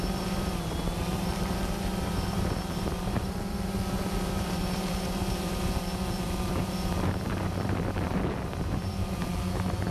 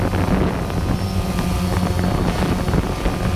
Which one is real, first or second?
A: second